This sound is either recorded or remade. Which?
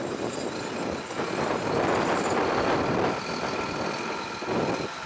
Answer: recorded